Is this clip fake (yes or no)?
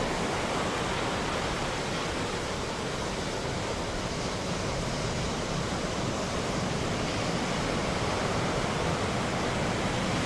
no